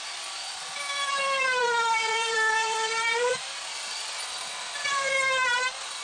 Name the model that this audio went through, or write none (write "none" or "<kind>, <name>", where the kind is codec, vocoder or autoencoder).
vocoder, BigVGAN v2